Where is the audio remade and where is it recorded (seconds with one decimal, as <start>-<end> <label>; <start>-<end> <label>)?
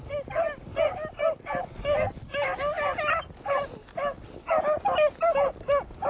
0.0-6.1 recorded